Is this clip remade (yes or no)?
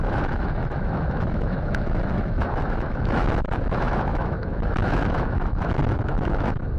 yes